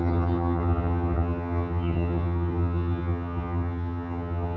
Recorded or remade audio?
remade